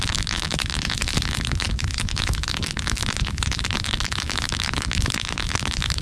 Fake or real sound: fake